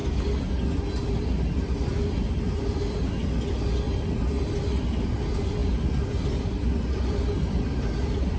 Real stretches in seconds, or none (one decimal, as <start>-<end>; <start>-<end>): 0.0-8.4